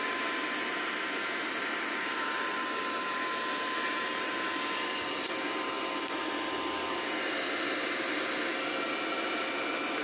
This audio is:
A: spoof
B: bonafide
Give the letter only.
B